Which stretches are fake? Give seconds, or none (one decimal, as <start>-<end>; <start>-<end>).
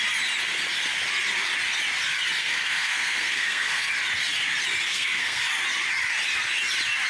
2.4-3.9; 4.9-5.4